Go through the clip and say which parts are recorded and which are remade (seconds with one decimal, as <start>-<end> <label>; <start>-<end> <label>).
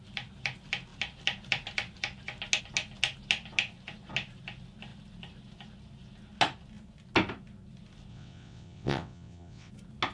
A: 0.0-8.1 recorded; 8.1-9.7 remade; 9.7-10.1 recorded